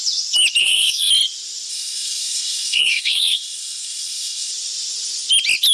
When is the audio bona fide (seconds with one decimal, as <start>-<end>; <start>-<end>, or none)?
0.0-0.6; 1.1-1.7; 4.5-5.7